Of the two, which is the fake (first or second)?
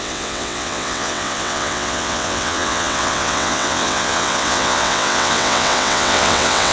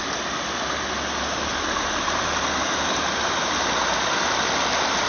first